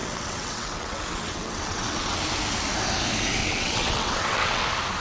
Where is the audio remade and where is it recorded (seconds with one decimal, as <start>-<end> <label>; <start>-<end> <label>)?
0.0-2.2 remade; 2.2-3.4 recorded; 3.4-4.6 remade; 4.6-5.0 recorded